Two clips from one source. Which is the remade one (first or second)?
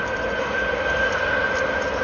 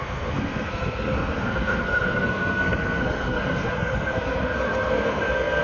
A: second